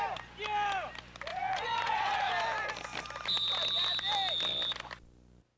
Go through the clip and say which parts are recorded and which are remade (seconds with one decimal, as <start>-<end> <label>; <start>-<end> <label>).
0.0-1.3 recorded; 1.3-2.3 remade; 2.3-5.6 recorded